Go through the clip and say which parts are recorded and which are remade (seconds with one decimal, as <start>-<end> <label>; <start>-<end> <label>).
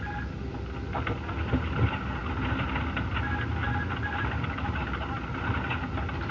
0.0-6.3 recorded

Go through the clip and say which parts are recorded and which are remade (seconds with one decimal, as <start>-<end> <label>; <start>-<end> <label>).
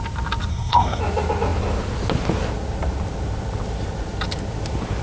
0.0-0.5 recorded; 0.5-1.0 remade; 1.0-5.0 recorded